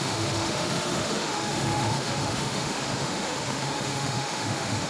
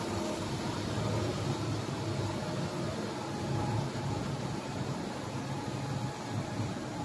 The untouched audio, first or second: second